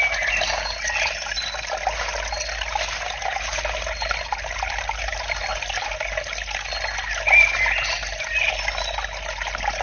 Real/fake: real